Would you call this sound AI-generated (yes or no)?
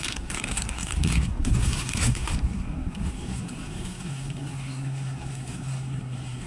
yes